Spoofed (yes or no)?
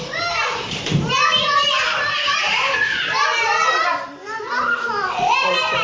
yes